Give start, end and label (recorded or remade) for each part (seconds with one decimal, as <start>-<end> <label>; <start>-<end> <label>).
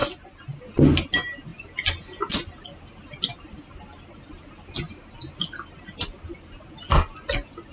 0.0-7.7 recorded